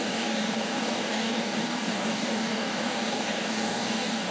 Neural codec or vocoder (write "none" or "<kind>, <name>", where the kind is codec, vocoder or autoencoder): codec, DAC